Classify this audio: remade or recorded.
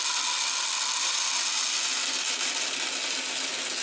recorded